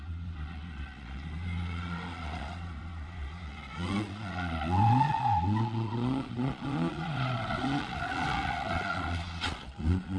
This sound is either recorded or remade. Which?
remade